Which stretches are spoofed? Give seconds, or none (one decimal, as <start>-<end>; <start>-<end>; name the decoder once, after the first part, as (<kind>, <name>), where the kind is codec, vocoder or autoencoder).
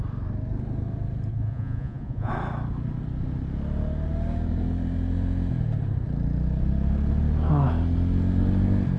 1.3-2.3 (vocoder, Vocos)